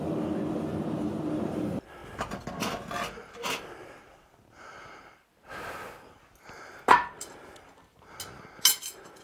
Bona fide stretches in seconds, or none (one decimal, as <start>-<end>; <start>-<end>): 0.0-9.2